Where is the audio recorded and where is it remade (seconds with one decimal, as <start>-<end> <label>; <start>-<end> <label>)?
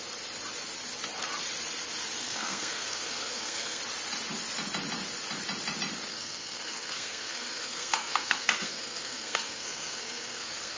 0.0-2.2 recorded; 2.2-3.8 remade; 3.8-6.1 recorded; 6.1-10.8 remade